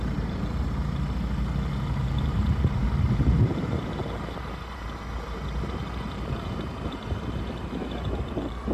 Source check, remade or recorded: remade